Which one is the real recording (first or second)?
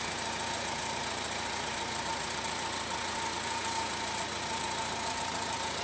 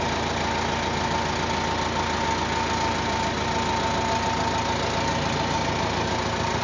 second